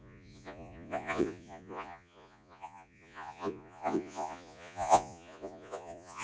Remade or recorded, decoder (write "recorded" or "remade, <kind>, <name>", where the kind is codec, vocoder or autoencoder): remade, vocoder, Vocos